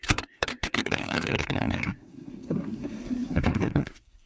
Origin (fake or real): fake